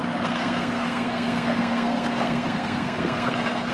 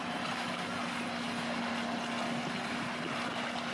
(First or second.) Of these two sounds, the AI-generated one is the first